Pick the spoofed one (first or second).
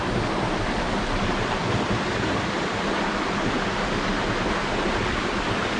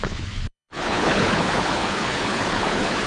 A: second